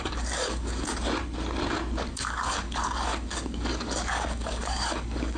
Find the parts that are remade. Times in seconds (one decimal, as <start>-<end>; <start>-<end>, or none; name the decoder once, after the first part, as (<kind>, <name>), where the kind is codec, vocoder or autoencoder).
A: 0.0-0.9 (codec, DAC); 2.1-5.4